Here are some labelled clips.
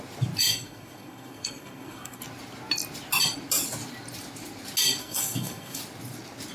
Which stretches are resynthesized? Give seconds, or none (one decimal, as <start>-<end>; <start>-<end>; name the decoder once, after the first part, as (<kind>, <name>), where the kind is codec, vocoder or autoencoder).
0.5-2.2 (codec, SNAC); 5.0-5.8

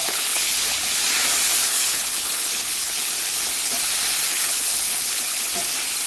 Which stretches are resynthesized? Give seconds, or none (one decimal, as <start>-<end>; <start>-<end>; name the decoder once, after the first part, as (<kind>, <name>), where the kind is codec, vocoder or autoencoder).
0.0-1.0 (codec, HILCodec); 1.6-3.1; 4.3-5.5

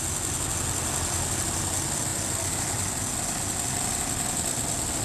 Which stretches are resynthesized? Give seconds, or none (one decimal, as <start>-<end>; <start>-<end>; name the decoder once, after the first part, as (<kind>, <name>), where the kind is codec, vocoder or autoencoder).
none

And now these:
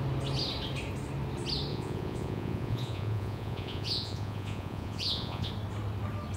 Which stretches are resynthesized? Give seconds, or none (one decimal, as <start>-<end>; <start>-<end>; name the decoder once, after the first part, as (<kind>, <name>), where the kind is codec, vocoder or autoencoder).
1.7-5.5 (vocoder, Vocos)